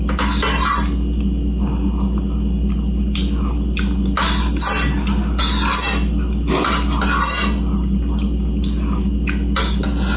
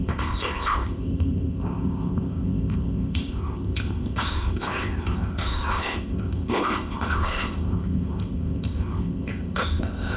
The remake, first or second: second